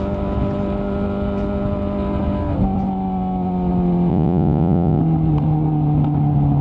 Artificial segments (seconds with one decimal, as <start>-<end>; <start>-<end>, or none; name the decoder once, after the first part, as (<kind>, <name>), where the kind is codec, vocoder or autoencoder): 4.1-5.0 (vocoder, Vocos)